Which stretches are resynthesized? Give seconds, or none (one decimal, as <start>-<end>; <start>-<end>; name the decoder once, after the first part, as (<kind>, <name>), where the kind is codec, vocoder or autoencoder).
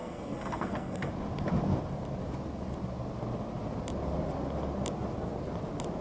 0.0-1.1 (codec, SNAC)